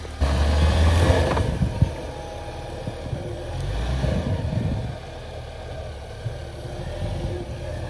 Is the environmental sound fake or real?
real